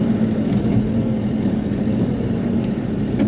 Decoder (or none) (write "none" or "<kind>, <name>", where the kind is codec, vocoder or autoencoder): none